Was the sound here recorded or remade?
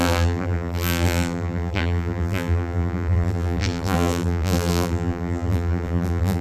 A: remade